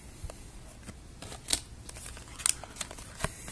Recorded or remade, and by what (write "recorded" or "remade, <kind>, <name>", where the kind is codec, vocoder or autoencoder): recorded